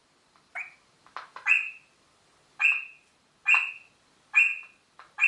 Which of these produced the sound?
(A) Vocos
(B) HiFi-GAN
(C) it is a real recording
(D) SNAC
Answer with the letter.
C